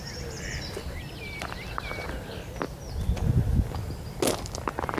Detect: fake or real real